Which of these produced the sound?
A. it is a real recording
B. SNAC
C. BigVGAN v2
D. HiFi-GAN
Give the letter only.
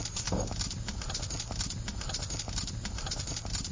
A